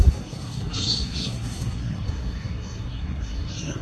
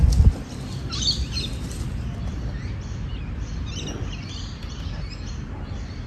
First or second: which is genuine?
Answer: second